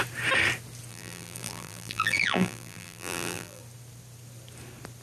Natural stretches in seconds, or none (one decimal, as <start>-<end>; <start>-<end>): 0.0-0.9; 3.6-5.0

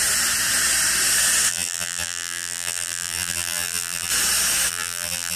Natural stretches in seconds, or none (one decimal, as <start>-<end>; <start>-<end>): 0.0-1.5; 4.1-4.7

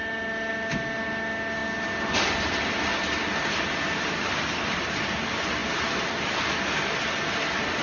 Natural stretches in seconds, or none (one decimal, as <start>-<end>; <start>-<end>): 0.0-5.6; 6.3-7.8

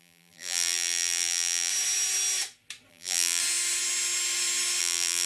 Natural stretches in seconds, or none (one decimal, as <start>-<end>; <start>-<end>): 1.7-2.9; 3.4-4.8

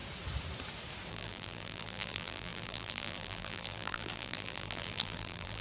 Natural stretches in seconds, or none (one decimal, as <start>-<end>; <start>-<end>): 0.0-1.1

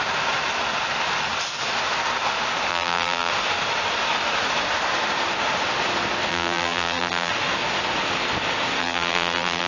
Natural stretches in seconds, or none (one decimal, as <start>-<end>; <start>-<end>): 0.0-2.7; 3.3-6.3; 7.3-8.8

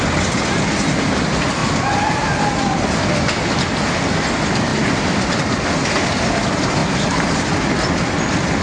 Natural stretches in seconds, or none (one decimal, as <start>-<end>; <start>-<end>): 0.0-1.6; 2.2-6.8; 7.4-8.6

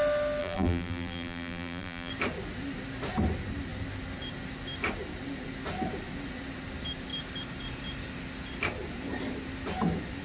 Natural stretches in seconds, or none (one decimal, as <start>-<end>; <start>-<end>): 0.0-0.4; 2.1-10.2